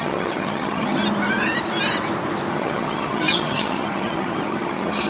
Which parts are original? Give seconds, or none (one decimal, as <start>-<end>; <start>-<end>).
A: 1.0-2.5